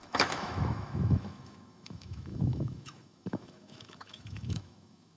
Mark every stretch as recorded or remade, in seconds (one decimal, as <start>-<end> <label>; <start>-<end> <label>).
0.0-5.2 remade

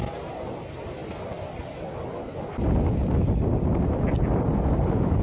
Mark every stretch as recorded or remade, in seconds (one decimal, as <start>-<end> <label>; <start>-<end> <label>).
0.0-5.2 recorded

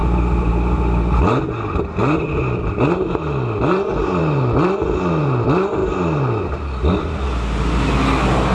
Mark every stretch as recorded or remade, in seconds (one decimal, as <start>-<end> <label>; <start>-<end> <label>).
0.0-8.5 recorded

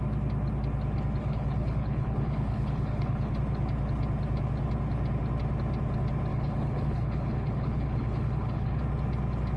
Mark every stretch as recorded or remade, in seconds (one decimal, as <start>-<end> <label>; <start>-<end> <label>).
0.0-1.2 recorded; 1.2-3.3 remade; 3.3-6.3 recorded; 6.3-8.8 remade; 8.8-9.6 recorded

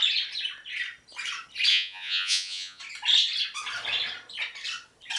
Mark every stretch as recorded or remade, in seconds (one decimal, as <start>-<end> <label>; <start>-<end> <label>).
0.0-1.7 recorded; 1.7-2.8 remade; 2.8-5.2 recorded